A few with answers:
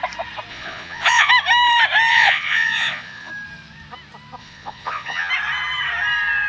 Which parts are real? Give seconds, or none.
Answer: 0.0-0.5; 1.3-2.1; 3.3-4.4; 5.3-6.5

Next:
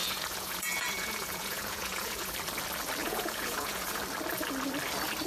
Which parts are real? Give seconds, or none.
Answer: 2.3-3.0; 4.0-5.3

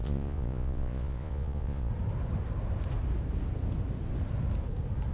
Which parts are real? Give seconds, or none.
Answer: 1.9-5.1

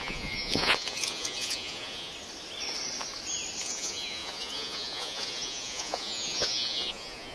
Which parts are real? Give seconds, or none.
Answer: 2.1-3.6